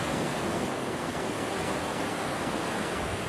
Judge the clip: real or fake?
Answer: fake